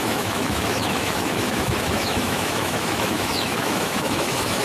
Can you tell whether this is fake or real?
fake